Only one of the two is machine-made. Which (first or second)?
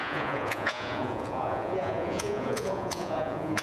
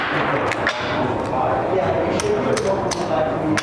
first